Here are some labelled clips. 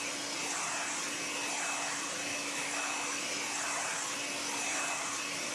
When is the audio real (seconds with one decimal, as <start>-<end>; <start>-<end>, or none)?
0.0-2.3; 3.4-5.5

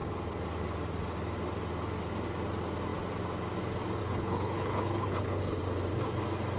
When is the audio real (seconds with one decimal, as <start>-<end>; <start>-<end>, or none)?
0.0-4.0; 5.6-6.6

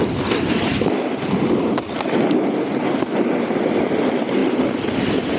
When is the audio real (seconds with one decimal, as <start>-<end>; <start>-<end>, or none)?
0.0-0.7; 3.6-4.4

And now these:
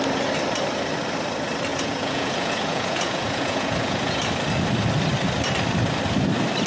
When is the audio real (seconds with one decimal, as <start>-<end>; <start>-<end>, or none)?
0.0-1.7; 4.2-6.7